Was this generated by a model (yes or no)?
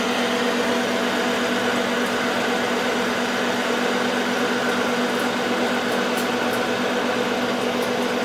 no